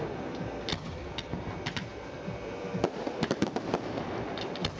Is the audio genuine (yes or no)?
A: yes